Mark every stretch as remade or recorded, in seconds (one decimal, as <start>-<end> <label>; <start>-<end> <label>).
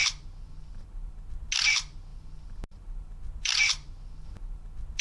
0.0-5.0 recorded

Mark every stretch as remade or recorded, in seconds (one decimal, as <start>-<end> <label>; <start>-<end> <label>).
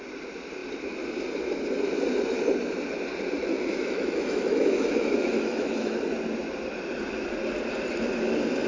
0.0-3.5 recorded; 3.5-6.0 remade; 6.0-8.7 recorded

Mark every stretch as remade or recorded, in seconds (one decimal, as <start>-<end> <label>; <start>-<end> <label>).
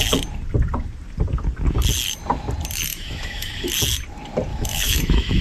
0.0-2.9 recorded; 2.9-3.7 remade; 3.7-4.5 recorded; 4.5-5.4 remade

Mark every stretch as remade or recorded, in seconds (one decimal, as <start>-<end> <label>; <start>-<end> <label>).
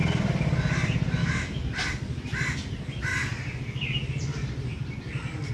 0.0-1.2 recorded; 1.2-1.7 remade; 1.7-5.5 recorded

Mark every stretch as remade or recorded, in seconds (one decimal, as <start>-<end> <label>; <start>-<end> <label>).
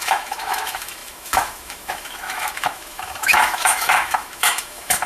0.0-5.1 remade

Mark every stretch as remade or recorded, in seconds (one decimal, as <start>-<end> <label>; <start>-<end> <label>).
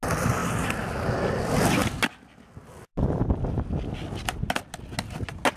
0.0-5.6 recorded